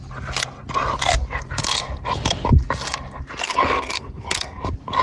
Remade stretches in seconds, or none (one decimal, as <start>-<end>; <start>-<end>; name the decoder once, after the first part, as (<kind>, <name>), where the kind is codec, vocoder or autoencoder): 3.4-4.6 (codec, SNAC)

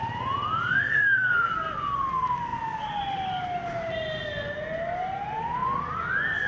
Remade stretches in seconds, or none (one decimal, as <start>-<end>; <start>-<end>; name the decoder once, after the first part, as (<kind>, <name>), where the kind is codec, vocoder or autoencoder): 0.7-1.5 (codec, SNAC)

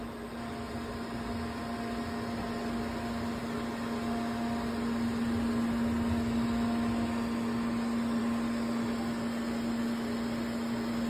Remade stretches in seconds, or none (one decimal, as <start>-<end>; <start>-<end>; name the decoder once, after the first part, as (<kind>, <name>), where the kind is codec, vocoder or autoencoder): none

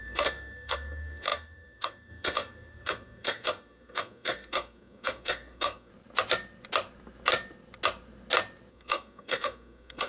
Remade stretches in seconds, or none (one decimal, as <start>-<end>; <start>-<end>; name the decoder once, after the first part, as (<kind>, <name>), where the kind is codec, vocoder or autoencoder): 0.0-5.9 (codec, SNAC); 8.7-10.1

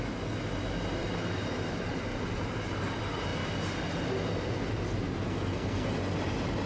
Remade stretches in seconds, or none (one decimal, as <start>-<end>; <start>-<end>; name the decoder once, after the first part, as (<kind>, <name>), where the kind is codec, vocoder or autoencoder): 5.3-5.9 (codec, SNAC)